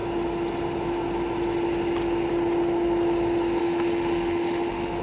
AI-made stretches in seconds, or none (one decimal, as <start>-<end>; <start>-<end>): 3.6-5.0